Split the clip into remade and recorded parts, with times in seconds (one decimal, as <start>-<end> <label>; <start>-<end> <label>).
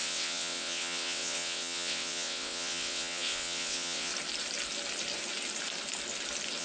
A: 0.0-4.1 remade; 4.1-6.6 recorded